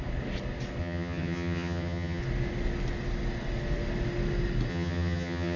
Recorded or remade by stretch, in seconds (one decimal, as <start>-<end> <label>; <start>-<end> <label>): 0.0-0.8 recorded; 0.8-2.2 remade; 2.2-4.7 recorded; 4.7-5.6 remade

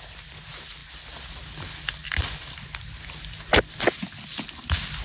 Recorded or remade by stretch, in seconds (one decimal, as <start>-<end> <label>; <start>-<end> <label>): 0.0-5.0 recorded

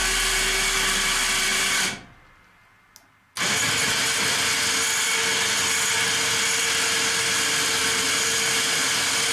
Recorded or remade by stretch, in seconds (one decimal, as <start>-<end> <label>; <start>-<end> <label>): 0.0-9.3 recorded

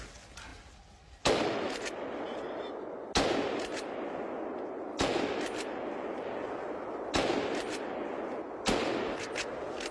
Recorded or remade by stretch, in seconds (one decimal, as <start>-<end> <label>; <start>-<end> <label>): 0.0-9.9 recorded

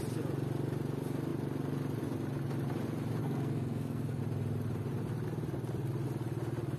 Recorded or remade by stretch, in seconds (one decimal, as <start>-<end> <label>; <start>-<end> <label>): 0.0-3.2 recorded; 3.2-4.2 remade; 4.2-6.8 recorded

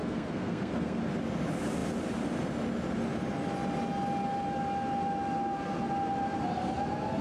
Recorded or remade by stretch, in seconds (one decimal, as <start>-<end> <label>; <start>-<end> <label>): 0.0-1.0 remade; 1.0-7.2 recorded

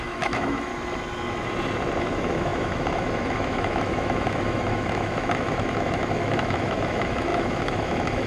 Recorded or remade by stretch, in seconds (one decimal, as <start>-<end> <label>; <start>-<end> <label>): 0.0-0.7 remade; 0.7-2.0 recorded; 2.0-8.3 remade